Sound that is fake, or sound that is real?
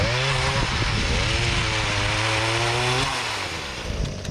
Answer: real